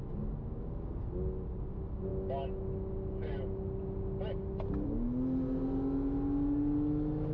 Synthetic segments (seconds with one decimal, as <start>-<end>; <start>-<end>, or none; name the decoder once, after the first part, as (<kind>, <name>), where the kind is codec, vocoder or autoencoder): none